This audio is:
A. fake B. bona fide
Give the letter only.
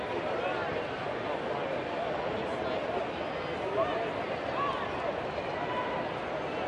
B